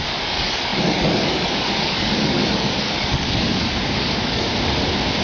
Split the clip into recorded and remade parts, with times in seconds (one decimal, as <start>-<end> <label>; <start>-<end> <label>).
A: 0.0-4.5 remade; 4.5-5.2 recorded